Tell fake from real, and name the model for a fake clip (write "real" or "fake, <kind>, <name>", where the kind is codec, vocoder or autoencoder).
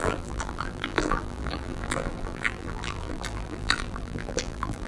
fake, vocoder, BigVGAN v2